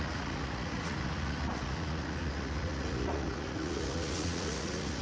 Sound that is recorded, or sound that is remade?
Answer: remade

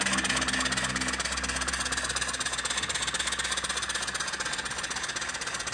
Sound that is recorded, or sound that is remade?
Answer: recorded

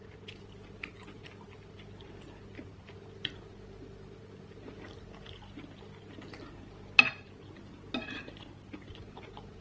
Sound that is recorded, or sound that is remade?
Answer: recorded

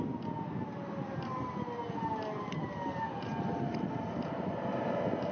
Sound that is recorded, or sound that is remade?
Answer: recorded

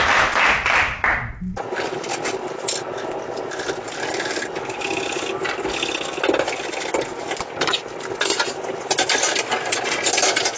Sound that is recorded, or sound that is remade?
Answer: recorded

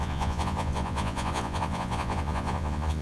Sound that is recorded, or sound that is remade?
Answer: remade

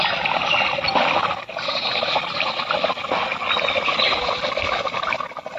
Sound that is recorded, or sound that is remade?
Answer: recorded